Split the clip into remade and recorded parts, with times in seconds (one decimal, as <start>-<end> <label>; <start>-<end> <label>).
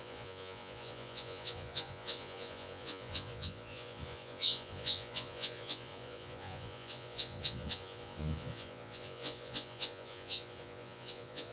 0.0-11.5 remade